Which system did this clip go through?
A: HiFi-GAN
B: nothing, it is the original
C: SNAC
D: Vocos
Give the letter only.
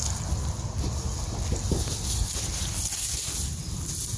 B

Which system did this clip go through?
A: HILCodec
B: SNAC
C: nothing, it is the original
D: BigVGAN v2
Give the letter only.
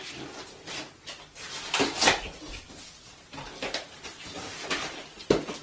C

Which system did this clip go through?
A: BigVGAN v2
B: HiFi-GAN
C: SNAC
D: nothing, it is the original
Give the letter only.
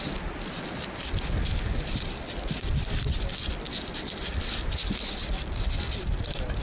A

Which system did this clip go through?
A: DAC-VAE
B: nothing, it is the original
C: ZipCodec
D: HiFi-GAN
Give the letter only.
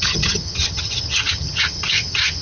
D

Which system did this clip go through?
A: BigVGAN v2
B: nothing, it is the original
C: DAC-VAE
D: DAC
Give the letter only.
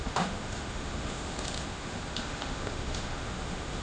C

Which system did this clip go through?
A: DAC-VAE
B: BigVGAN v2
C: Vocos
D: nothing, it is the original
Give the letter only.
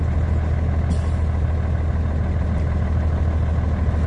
D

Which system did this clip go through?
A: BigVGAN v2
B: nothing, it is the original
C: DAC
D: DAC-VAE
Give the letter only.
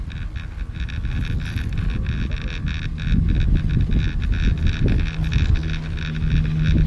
B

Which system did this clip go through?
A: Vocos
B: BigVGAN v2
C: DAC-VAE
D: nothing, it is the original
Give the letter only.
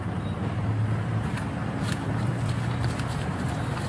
B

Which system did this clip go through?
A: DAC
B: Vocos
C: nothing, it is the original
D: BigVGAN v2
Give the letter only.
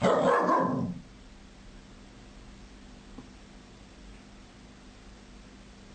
C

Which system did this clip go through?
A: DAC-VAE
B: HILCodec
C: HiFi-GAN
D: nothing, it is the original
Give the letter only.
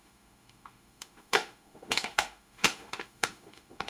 A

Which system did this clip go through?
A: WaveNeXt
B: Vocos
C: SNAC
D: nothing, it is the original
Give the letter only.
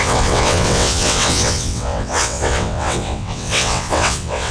A